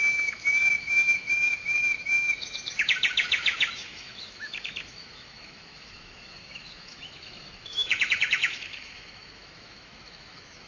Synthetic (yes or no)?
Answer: yes